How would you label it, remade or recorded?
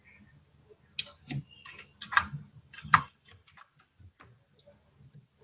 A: recorded